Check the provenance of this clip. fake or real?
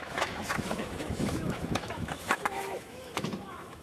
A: fake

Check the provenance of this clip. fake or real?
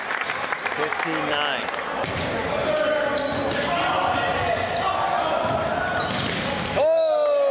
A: real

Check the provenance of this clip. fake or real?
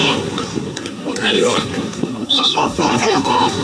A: fake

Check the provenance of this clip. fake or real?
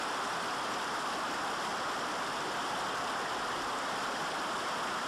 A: real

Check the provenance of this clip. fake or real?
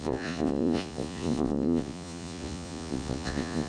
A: fake